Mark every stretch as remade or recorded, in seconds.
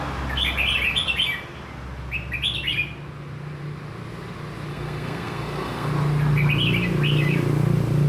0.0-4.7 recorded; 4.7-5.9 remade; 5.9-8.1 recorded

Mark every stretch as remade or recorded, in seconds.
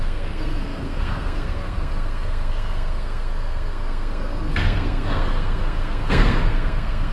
0.0-7.1 remade